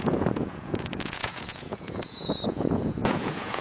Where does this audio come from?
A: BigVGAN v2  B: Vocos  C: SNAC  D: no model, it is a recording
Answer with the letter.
B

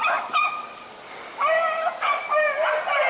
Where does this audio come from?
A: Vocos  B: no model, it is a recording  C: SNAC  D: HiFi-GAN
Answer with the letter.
B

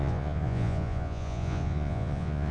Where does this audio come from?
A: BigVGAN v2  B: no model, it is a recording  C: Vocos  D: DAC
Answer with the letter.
C